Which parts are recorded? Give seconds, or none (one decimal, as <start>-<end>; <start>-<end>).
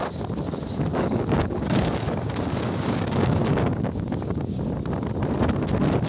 0.0-0.9; 4.6-6.1